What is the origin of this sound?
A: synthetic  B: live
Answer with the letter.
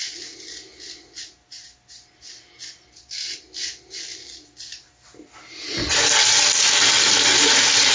B